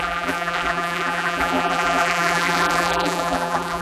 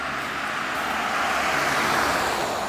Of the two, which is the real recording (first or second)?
second